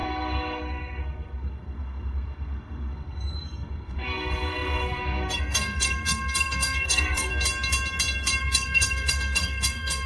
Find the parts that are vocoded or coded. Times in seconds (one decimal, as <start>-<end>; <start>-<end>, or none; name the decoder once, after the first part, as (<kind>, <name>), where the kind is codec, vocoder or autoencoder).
0.0-7.3 (codec, SNAC); 8.4-10.1